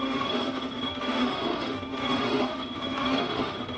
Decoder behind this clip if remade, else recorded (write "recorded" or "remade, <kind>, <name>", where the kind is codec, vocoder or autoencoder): remade, autoencoder, DAC-VAE